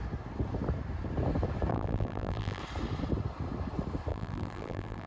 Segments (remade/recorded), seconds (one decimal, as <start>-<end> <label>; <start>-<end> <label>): 0.0-1.7 recorded; 1.7-2.6 remade; 2.6-4.1 recorded; 4.1-5.1 remade